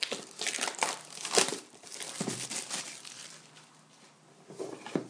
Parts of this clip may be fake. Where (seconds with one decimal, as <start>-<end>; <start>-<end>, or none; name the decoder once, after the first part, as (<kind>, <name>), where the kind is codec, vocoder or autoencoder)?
0.0-5.1 (vocoder, BigVGAN v2)